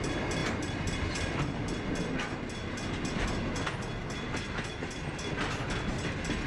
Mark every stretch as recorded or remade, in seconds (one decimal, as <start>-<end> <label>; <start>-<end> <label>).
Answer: 0.0-6.5 recorded